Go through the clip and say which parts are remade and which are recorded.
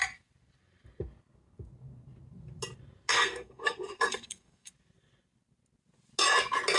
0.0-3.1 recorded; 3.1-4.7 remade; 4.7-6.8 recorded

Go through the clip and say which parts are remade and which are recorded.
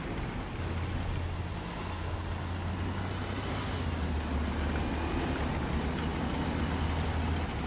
0.0-7.7 recorded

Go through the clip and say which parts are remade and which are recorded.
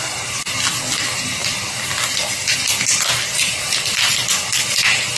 0.0-5.2 recorded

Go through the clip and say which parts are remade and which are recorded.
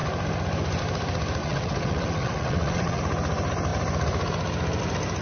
0.0-1.4 recorded; 1.4-3.0 remade; 3.0-5.2 recorded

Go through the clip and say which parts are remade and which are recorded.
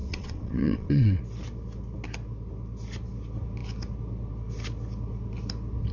0.0-1.2 remade; 1.2-5.9 recorded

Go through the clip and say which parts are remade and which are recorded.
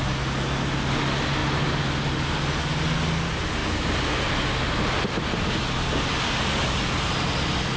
0.0-7.8 recorded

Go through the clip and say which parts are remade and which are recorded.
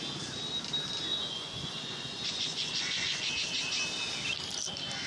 0.0-1.1 recorded; 1.1-3.3 remade; 3.3-5.1 recorded